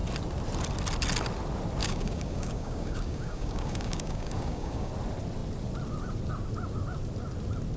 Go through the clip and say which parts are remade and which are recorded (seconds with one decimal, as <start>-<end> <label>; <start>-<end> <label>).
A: 0.0-1.8 recorded; 1.8-4.9 remade; 4.9-7.8 recorded